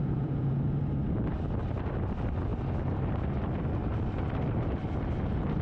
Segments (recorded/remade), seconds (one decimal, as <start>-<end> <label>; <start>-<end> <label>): 0.0-0.8 remade; 0.8-5.6 recorded